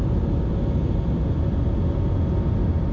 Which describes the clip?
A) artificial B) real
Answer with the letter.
B